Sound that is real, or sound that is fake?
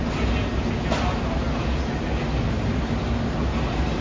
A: real